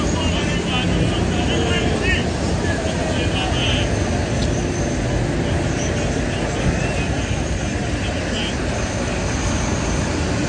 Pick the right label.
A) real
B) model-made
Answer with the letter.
A